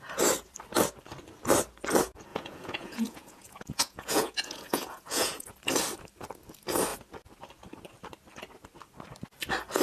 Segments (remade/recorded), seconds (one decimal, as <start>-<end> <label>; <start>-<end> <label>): 0.0-2.3 recorded; 2.3-5.5 remade; 5.5-9.8 recorded